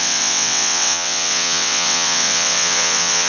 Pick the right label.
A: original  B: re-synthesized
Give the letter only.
B